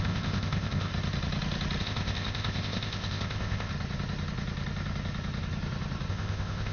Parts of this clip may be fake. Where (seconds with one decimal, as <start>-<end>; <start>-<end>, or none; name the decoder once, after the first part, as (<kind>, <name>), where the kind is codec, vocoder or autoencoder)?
0.0-0.9 (codec, ZipCodec); 1.8-3.7; 6.1-6.7

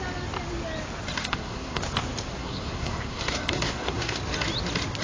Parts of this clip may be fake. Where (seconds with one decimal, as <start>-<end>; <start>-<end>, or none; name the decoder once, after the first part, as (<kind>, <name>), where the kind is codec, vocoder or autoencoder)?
1.2-1.8 (codec, SNAC); 2.4-4.2

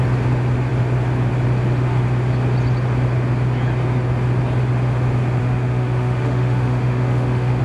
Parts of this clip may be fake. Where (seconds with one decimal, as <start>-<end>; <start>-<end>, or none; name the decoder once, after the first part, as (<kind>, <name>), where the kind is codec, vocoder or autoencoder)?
5.4-7.6 (autoencoder, DAC-VAE)

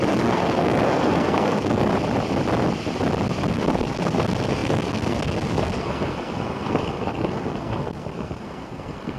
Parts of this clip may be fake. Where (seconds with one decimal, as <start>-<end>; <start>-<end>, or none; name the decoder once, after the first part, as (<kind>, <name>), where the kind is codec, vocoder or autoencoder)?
0.0-1.9 (codec, SNAC); 3.5-9.2

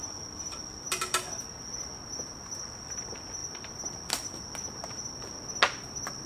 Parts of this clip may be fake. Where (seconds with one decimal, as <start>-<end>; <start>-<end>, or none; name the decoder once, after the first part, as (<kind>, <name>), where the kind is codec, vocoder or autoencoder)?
3.4-4.1 (vocoder, BigVGAN v2)

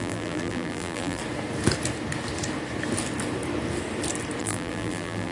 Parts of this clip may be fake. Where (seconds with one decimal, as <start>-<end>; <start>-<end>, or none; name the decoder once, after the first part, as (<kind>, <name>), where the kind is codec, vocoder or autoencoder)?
0.0-1.2 (vocoder, BigVGAN v2); 4.4-5.3

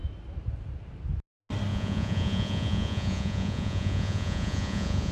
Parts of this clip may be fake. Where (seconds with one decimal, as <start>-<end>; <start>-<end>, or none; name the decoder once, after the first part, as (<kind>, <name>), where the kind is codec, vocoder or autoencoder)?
1.7-5.1 (vocoder, Vocos)

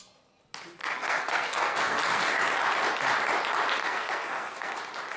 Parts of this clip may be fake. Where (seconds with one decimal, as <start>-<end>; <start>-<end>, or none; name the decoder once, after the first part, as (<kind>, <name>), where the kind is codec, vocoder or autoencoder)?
0.8-2.4 (codec, SNAC); 3.8-4.8